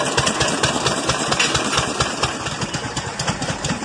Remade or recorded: remade